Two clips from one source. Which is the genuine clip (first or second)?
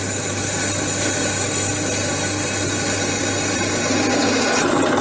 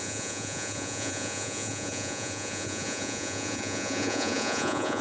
first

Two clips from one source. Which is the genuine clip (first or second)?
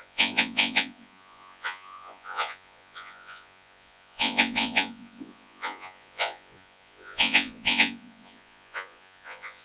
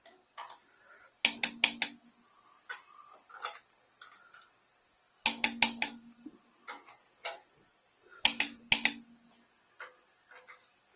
second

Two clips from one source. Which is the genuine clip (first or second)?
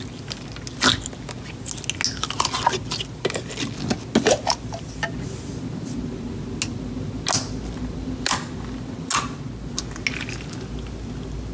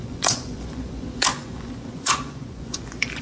first